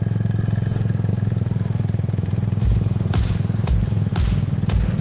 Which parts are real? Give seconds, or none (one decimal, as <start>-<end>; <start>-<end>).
0.0-1.1; 4.1-5.0